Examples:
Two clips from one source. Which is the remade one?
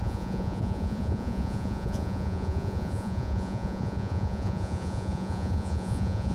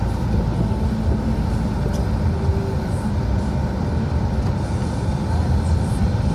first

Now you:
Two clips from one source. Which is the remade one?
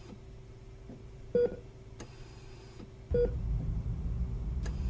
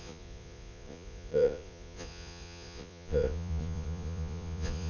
second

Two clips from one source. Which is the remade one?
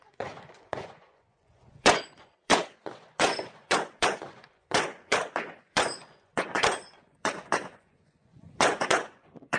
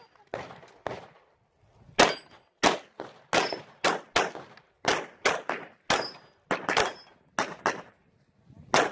first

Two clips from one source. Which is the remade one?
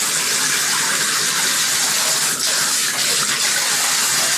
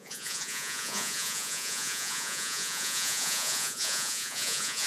second